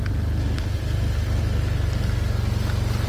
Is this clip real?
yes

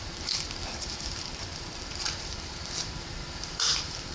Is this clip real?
no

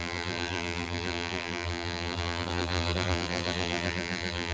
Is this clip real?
no